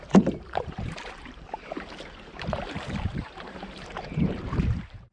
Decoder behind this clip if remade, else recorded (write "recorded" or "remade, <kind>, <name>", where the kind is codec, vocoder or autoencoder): remade, vocoder, BigVGAN v2